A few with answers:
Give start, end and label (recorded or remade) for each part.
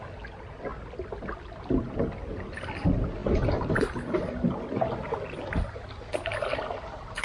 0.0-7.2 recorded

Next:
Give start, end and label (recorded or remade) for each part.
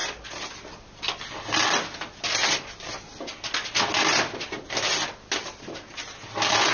0.0-6.7 recorded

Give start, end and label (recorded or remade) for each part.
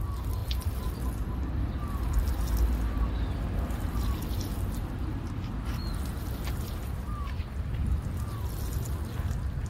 0.0-6.1 recorded; 6.1-7.4 remade; 7.4-9.7 recorded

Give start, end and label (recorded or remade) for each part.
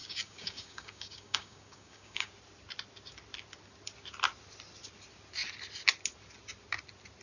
0.0-2.3 remade; 2.3-7.2 recorded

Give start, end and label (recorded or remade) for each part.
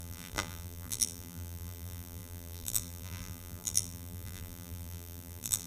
0.0-5.7 remade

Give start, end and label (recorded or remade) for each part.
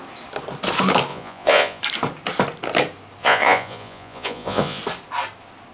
0.0-1.1 recorded; 1.1-1.8 remade; 1.8-3.2 recorded; 3.2-4.8 remade; 4.8-5.7 recorded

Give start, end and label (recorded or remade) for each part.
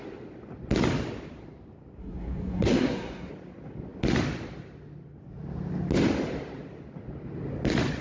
0.0-2.0 recorded; 2.0-3.3 remade; 3.3-8.0 recorded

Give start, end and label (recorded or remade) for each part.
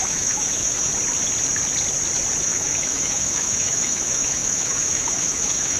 0.0-0.9 remade; 0.9-2.4 recorded; 2.4-5.8 remade